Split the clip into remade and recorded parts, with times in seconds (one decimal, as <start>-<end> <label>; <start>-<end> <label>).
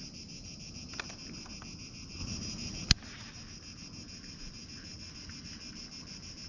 0.0-6.5 recorded